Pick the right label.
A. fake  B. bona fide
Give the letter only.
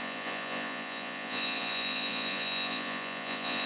A